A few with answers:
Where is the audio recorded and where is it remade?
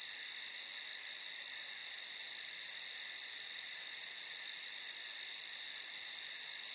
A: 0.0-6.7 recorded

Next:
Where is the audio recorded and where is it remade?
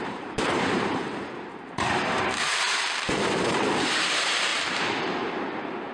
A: 0.0-5.9 remade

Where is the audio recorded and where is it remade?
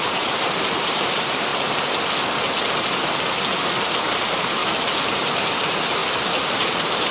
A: 0.0-1.5 remade; 1.5-4.0 recorded; 4.0-4.6 remade; 4.6-5.1 recorded; 5.1-7.1 remade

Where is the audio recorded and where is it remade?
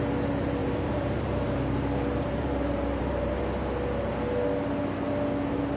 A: 0.0-0.6 recorded; 0.6-3.4 remade; 3.4-5.8 recorded